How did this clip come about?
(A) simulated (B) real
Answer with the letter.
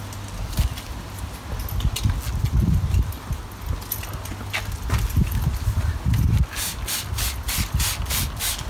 B